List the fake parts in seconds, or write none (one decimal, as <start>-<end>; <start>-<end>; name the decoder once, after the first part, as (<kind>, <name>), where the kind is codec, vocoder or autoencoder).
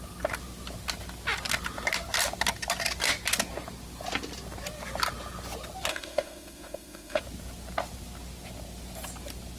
5.9-7.2 (autoencoder, DAC-VAE)